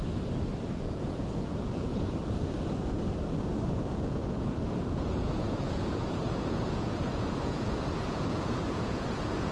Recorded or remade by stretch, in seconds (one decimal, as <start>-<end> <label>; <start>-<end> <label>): 0.0-0.7 recorded; 0.7-1.9 remade; 1.9-3.7 recorded; 3.7-9.5 remade